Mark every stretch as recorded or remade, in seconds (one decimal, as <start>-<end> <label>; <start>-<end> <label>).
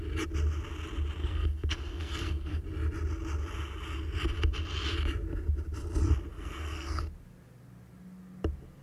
0.0-1.2 recorded; 1.2-2.6 remade; 2.6-6.3 recorded; 6.3-7.0 remade; 7.0-8.8 recorded